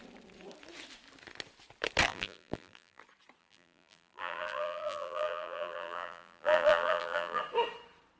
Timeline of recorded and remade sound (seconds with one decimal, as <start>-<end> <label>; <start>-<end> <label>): 0.0-2.1 recorded; 2.1-3.0 remade; 3.0-3.4 recorded; 3.4-7.4 remade; 7.4-8.2 recorded